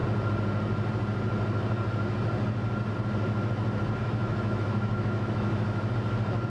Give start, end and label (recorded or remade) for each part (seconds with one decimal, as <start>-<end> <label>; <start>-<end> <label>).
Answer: 0.0-4.0 recorded; 4.0-5.9 remade; 5.9-6.5 recorded

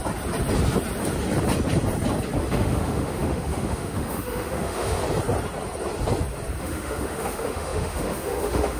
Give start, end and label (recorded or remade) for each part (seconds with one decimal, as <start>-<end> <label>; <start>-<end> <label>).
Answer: 0.0-2.5 recorded; 2.5-5.0 remade; 5.0-6.6 recorded; 6.6-8.8 remade

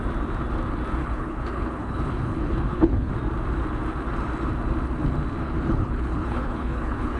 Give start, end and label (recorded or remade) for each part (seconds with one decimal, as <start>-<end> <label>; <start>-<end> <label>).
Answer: 0.0-1.0 recorded; 1.0-3.1 remade; 3.1-5.4 recorded; 5.4-7.2 remade

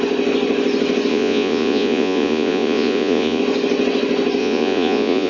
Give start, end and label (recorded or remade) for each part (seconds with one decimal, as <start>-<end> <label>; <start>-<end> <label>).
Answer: 0.0-1.1 recorded; 1.1-3.4 remade; 3.4-4.4 recorded; 4.4-5.3 remade

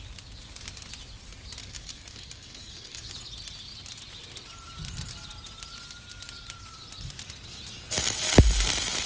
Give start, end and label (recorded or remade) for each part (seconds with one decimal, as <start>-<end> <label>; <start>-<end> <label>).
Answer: 0.0-1.6 recorded; 1.6-3.1 remade; 3.1-9.1 recorded

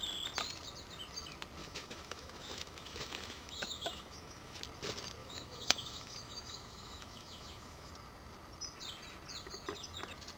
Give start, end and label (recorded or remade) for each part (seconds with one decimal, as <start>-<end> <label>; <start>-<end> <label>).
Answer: 0.0-1.6 recorded; 1.6-4.6 remade; 4.6-5.2 recorded; 5.2-7.9 remade; 7.9-10.4 recorded

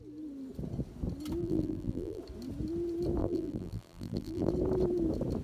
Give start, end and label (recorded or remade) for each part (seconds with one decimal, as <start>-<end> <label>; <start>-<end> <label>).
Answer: 0.0-1.4 recorded; 1.4-2.2 remade; 2.2-3.2 recorded; 3.2-4.5 remade; 4.5-5.4 recorded

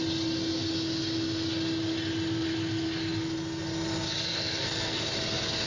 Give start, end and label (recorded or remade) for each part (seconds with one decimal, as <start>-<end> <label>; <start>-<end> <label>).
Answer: 0.0-4.3 recorded; 4.3-5.0 remade; 5.0-5.7 recorded